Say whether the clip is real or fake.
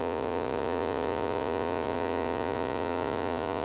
fake